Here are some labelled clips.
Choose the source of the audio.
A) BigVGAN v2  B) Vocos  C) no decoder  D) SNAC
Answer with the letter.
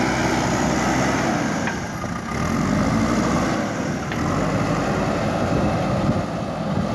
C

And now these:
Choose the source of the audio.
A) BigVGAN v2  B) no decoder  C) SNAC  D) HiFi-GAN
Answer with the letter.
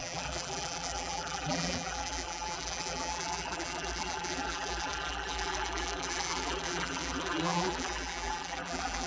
A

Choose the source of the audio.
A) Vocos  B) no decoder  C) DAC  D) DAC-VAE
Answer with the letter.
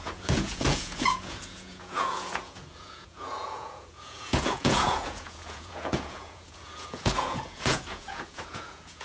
A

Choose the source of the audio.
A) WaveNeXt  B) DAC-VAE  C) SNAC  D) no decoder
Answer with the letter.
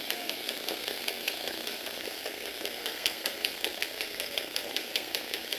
C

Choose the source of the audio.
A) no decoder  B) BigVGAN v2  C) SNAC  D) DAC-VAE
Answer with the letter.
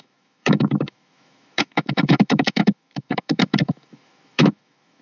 D